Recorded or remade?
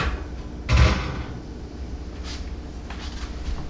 recorded